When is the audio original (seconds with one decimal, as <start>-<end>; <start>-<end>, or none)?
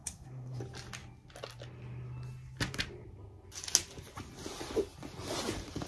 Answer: 0.6-5.9